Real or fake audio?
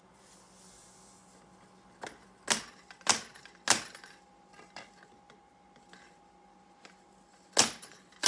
real